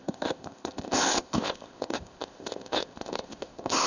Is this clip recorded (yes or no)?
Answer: no